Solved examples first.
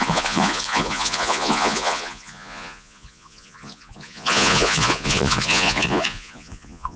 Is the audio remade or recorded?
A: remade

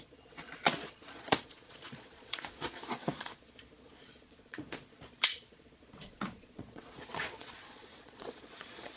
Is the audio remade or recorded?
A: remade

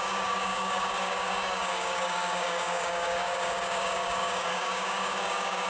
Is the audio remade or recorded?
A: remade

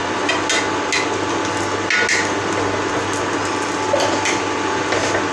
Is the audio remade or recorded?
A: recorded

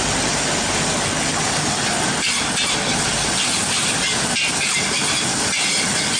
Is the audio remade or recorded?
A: recorded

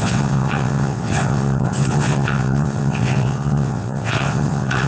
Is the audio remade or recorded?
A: remade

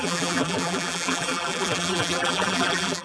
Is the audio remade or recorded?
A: remade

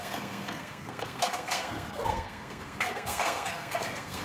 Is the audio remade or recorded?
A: remade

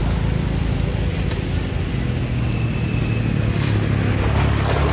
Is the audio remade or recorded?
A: recorded